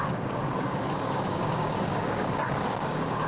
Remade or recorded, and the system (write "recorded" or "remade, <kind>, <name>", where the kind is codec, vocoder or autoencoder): remade, codec, DAC